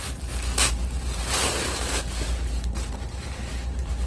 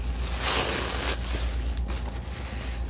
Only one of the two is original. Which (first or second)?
second